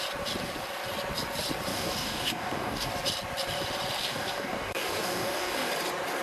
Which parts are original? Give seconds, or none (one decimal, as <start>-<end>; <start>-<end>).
0.0-1.7; 2.9-4.0; 5.7-6.2